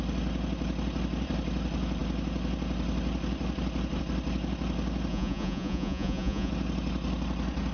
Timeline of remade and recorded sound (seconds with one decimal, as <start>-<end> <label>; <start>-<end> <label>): 0.0-5.1 recorded; 5.1-6.5 remade; 6.5-7.7 recorded